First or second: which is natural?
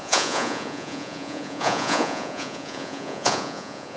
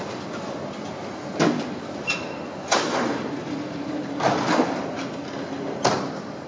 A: second